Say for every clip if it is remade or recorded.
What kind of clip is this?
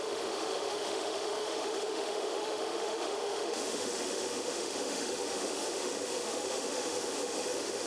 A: remade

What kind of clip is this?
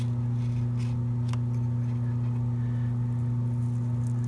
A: recorded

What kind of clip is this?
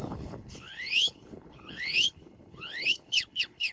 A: remade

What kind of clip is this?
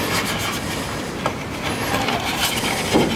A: recorded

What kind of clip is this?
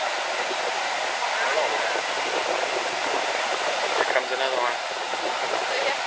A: recorded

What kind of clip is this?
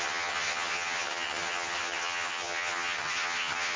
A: remade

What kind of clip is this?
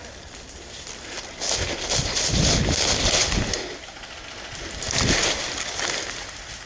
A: recorded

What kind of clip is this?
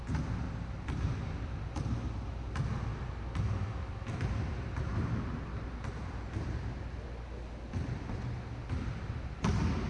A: recorded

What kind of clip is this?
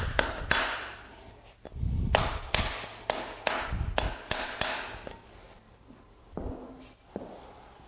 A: recorded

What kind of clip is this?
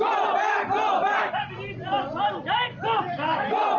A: recorded